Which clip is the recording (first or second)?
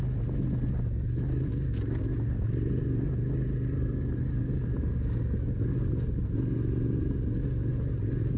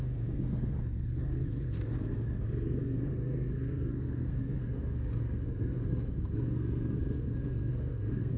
first